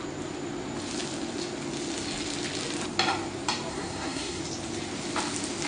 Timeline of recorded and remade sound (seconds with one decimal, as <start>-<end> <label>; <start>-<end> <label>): 0.0-3.7 recorded; 3.7-4.4 remade; 4.4-5.7 recorded